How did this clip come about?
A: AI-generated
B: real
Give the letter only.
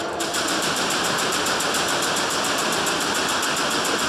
A